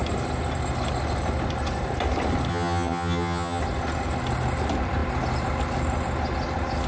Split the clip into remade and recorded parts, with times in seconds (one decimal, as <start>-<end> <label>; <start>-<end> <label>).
0.0-2.5 recorded; 2.5-3.6 remade; 3.6-6.9 recorded